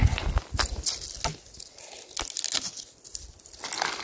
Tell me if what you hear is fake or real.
real